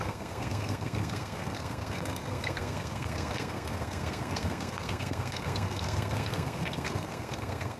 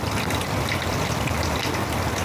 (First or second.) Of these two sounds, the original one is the second